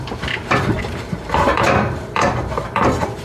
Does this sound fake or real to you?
fake